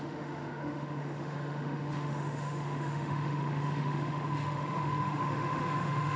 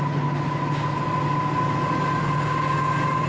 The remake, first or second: first